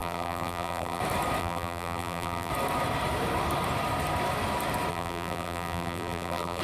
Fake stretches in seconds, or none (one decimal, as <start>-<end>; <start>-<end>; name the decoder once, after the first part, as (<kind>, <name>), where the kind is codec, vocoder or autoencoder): 0.0-1.0 (vocoder, BigVGAN v2); 1.4-2.5; 4.9-6.6